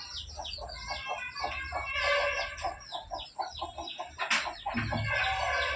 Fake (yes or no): no